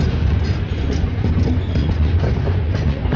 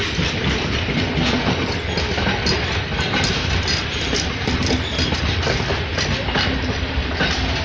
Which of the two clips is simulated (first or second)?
first